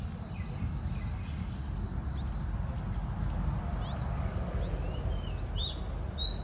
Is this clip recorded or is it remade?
recorded